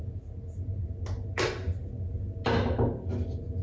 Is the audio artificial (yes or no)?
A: no